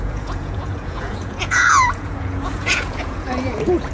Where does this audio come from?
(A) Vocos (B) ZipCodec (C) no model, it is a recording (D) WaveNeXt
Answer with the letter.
A